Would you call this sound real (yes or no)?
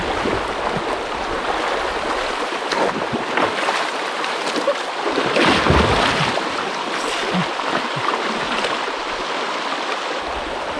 yes